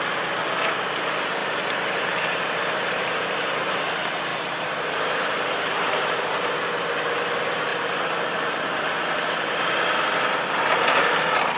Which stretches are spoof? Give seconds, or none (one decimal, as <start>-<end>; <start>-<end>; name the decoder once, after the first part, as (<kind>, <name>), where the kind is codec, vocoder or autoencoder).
1.4-3.8 (vocoder, BigVGAN v2); 4.3-6.9; 7.7-11.6